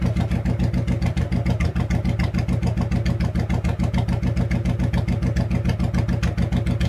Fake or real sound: real